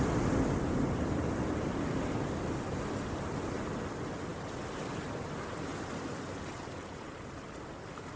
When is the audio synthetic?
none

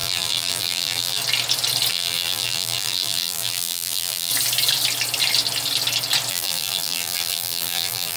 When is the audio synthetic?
0.0-1.2 (vocoder, BigVGAN v2); 1.9-4.3; 6.3-8.2